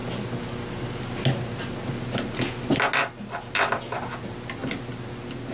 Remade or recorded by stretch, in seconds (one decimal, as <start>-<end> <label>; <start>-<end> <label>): 0.0-5.5 recorded